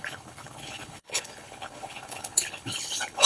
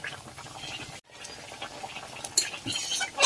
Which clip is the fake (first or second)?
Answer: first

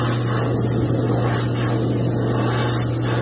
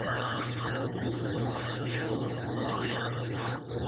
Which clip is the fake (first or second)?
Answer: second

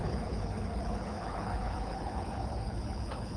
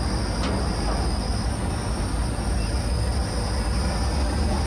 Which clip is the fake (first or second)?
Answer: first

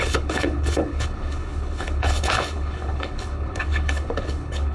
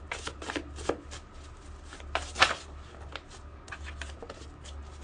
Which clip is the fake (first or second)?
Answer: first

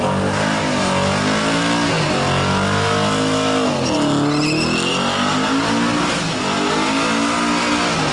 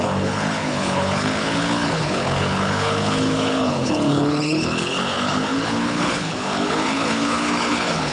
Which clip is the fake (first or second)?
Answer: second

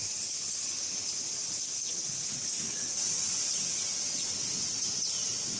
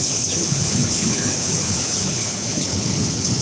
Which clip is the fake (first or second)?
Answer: second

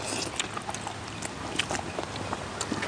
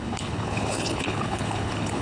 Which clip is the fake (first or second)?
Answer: second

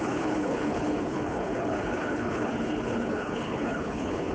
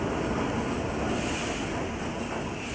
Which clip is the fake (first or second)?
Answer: first